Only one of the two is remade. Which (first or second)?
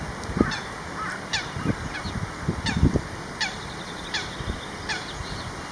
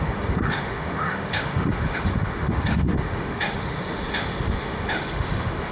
second